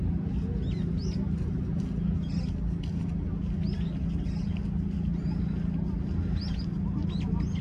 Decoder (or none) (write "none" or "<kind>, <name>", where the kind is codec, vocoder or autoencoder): none